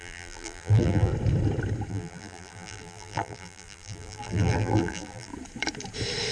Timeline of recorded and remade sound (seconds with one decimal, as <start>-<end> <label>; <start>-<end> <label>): 0.0-1.1 remade; 1.1-1.9 recorded; 1.9-5.3 remade; 5.3-6.3 recorded